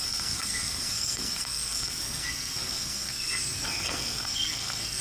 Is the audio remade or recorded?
remade